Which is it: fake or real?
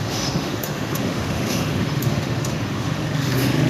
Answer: fake